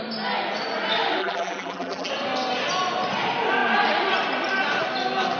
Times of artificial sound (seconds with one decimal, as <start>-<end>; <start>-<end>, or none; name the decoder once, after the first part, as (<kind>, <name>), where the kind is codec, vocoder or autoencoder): 1.2-2.1 (vocoder, BigVGAN v2)

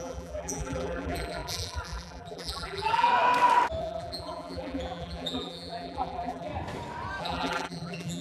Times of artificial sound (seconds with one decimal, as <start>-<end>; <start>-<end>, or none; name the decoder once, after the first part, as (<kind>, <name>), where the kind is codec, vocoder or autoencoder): 0.0-3.1 (vocoder, BigVGAN v2); 3.8-6.5; 7.2-8.2

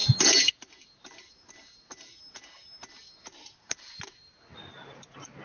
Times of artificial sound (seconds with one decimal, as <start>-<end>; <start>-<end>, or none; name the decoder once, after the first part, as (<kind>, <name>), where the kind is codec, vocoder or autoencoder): none

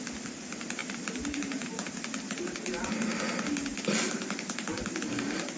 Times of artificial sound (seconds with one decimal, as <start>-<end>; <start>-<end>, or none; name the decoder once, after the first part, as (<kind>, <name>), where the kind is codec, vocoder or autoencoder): 0.8-2.2 (vocoder, BigVGAN v2)

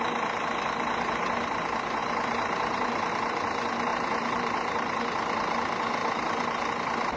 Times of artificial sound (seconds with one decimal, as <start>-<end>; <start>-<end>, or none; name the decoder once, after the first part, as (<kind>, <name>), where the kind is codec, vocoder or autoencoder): 2.0-3.1 (vocoder, BigVGAN v2); 3.9-5.0; 6.0-6.7